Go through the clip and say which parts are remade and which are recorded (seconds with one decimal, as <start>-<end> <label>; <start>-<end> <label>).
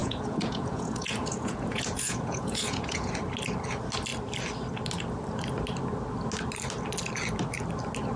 0.0-3.1 remade; 3.1-8.2 recorded